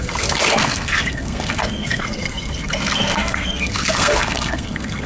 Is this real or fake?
fake